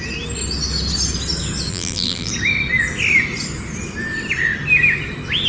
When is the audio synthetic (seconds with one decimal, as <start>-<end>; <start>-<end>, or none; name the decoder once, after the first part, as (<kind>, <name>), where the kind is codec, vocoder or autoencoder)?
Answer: 1.7-2.3 (vocoder, BigVGAN v2)